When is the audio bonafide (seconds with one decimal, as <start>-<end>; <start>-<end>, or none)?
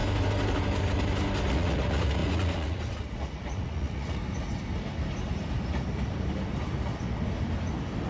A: 0.0-1.5; 4.2-8.1